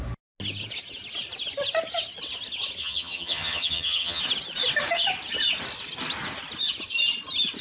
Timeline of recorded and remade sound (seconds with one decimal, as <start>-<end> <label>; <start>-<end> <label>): 0.0-2.8 recorded; 2.8-4.2 remade; 4.2-7.6 recorded